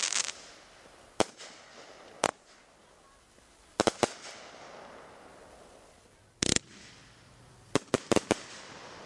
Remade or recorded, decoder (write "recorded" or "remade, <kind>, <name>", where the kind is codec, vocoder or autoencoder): recorded